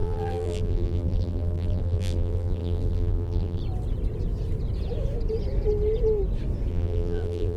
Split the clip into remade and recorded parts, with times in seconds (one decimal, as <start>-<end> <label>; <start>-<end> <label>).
0.0-3.6 remade; 3.6-6.7 recorded; 6.7-7.6 remade